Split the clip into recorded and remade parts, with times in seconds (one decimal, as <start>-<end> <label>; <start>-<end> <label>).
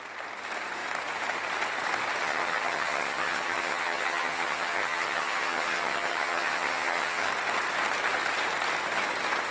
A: 0.0-2.2 recorded; 2.2-7.3 remade; 7.3-9.5 recorded